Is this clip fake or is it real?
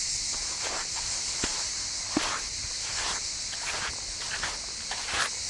real